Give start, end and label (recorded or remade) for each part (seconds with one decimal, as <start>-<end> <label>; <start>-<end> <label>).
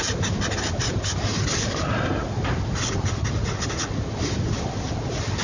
0.0-5.4 recorded